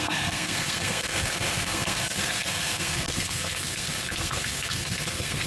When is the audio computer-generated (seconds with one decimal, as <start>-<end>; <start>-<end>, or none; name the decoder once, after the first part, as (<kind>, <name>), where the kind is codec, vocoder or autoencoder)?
0.0-5.5 (codec, SNAC)